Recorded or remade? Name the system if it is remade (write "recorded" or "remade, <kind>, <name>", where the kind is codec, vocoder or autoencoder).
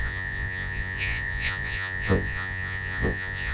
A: remade, vocoder, Vocos